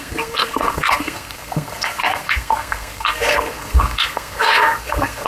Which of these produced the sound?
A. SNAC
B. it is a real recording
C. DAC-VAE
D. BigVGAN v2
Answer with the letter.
A